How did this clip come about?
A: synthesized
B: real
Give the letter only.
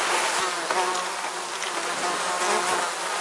B